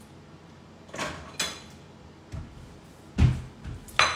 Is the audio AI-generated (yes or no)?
no